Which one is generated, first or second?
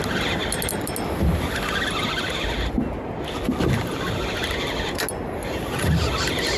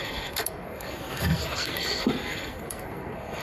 second